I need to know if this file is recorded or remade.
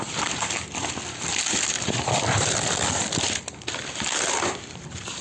remade